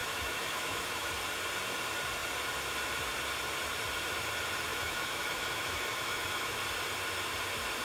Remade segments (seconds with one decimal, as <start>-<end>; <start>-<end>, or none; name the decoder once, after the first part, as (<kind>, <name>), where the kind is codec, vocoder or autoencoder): 0.0-1.1 (autoencoder, DAC-VAE); 4.7-6.6